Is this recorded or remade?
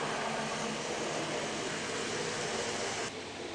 recorded